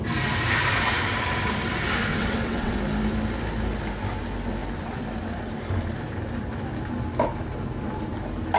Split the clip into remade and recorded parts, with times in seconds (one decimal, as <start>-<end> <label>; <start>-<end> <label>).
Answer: 0.0-2.1 recorded; 2.1-2.7 remade; 2.7-8.6 recorded